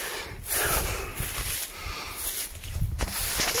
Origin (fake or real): real